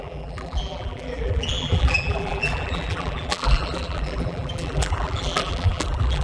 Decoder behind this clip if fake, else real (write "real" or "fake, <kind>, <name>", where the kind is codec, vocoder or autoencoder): fake, vocoder, BigVGAN v2